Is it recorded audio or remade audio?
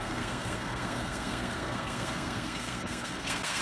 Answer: remade